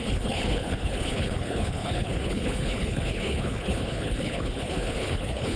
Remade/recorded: remade